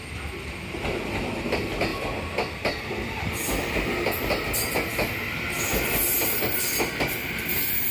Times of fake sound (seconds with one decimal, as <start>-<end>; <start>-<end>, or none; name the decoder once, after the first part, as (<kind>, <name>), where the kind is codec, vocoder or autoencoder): 7.2-7.9 (vocoder, BigVGAN v2)